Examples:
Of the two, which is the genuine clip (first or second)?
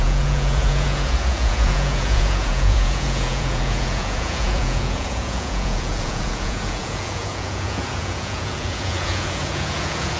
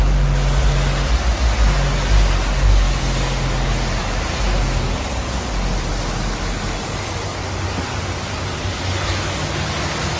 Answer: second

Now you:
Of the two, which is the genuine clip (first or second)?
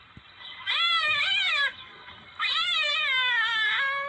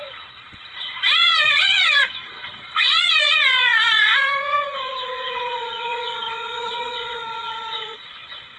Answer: first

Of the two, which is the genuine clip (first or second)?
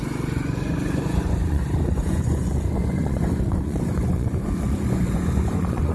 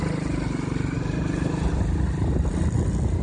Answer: second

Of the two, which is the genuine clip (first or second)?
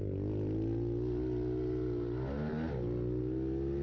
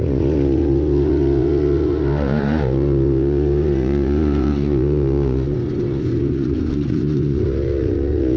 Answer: first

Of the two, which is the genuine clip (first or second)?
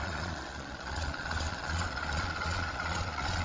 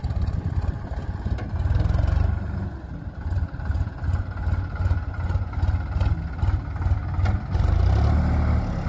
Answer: second